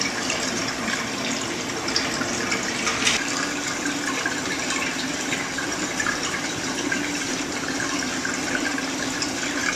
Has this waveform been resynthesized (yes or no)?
no